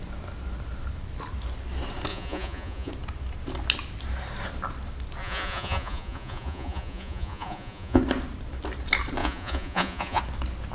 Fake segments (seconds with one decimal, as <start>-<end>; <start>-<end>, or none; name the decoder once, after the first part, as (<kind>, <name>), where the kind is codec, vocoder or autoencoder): 2.1-2.9 (vocoder, Vocos); 5.2-8.0; 9.2-10.2